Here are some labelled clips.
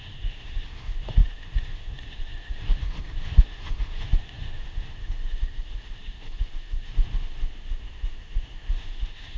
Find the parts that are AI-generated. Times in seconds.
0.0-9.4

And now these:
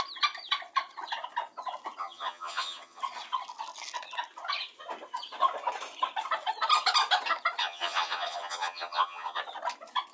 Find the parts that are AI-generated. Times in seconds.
2.0-3.0; 7.6-9.4

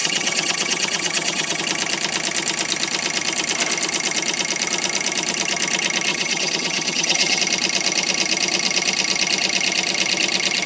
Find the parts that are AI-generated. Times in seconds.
0.0-1.6; 6.1-7.4